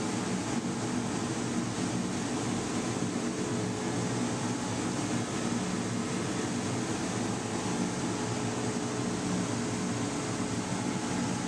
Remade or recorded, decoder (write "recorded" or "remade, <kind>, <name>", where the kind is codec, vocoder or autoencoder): recorded